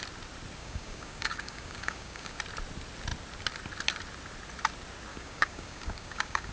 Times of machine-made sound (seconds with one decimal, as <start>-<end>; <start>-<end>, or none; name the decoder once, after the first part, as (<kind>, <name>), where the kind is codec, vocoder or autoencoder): 0.6-2.4 (codec, DAC); 5.1-6.5

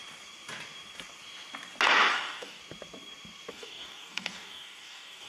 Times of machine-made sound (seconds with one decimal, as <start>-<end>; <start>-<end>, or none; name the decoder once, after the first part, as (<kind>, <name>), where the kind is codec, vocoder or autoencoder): 2.1-2.6 (codec, DAC); 3.5-5.3